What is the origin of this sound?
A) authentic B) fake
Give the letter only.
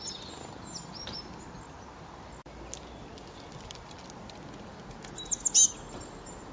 A